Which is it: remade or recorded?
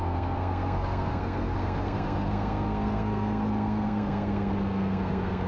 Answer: remade